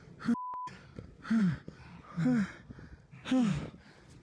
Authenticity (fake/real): real